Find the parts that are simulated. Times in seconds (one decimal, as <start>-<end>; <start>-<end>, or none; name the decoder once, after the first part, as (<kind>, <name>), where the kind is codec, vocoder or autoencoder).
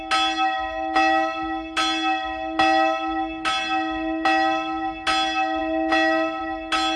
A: none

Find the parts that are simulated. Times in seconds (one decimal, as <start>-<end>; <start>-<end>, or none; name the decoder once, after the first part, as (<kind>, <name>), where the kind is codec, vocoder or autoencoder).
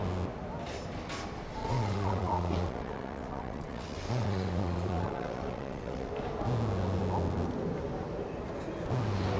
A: 1.6-6.1 (vocoder, WaveNeXt)